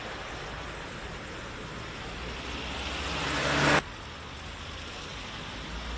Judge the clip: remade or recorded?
recorded